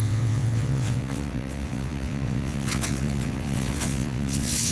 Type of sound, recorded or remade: remade